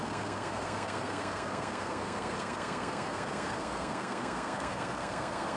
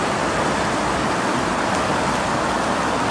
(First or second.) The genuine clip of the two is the second